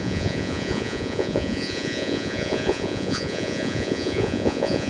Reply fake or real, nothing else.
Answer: fake